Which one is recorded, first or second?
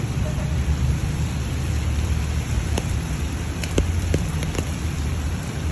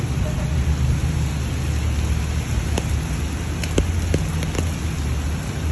second